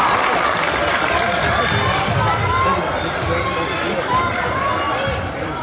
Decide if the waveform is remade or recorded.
recorded